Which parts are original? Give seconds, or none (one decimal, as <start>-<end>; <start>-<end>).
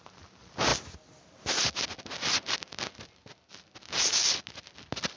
0.0-5.2